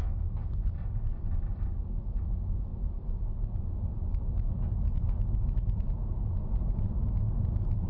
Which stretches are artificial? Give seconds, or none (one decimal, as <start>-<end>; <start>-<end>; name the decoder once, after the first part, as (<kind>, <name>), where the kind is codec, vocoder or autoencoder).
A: none